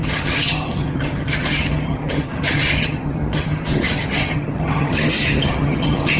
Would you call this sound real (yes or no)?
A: no